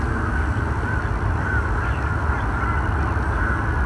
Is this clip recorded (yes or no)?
yes